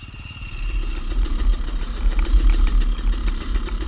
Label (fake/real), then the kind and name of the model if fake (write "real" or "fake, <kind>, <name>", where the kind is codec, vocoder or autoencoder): fake, vocoder, BigVGAN v2